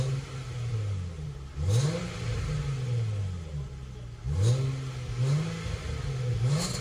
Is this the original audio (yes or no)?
yes